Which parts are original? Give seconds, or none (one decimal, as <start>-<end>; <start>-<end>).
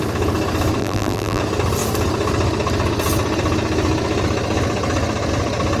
0.0-0.8; 1.4-5.8